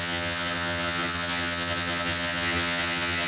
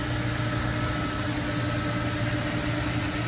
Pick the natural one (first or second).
second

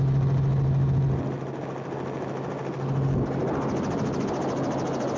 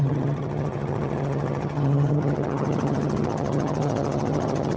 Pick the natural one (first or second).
first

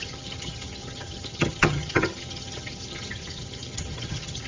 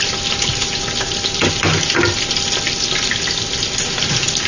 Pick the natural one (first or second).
second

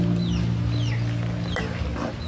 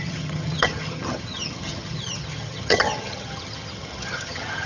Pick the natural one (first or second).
first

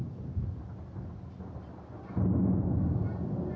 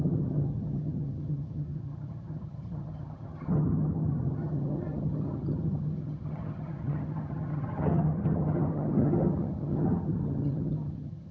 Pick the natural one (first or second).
first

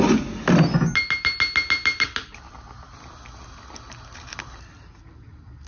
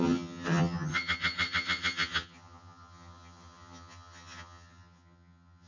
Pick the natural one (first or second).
first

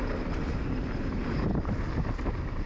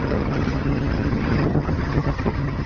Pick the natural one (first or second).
first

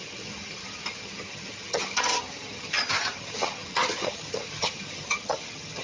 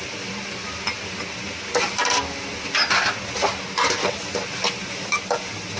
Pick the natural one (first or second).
second